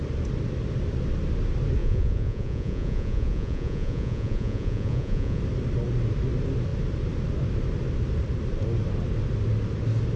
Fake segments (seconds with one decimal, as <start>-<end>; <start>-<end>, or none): 1.8-5.4